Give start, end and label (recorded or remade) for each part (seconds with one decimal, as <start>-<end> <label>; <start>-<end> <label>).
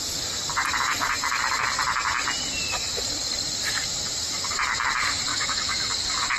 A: 0.0-5.3 recorded; 5.3-5.9 remade; 5.9-6.4 recorded